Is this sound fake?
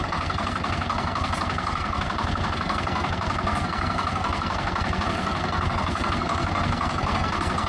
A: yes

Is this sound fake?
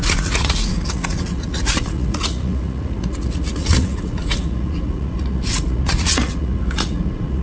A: yes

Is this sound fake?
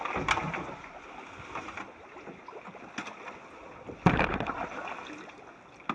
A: no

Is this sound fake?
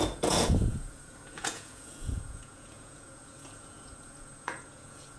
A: yes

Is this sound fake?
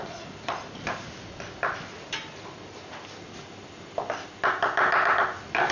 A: no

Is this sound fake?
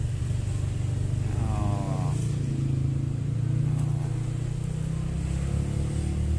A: no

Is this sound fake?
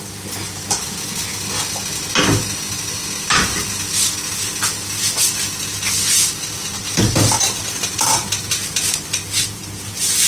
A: no